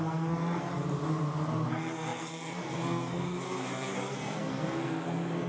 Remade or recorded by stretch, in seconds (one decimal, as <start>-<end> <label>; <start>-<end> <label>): 0.0-0.7 remade; 0.7-1.7 recorded; 1.7-5.5 remade